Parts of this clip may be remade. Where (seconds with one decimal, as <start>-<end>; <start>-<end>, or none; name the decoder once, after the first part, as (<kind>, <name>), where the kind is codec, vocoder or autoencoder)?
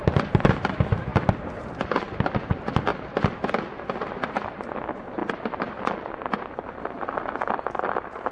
none